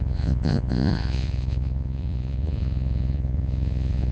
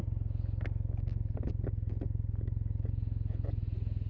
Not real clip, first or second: first